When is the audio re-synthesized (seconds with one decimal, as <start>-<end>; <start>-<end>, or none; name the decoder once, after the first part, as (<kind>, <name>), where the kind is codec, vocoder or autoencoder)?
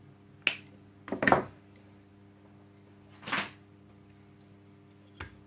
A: none